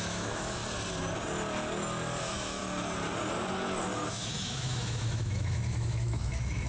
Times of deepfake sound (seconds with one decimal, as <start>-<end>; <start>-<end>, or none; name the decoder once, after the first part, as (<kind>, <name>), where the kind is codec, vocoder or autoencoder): 0.0-0.6 (autoencoder, DAC-VAE); 2.2-2.6; 4.1-6.7